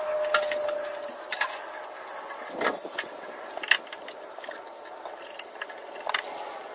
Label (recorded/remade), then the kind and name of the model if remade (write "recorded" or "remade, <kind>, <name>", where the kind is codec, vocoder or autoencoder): recorded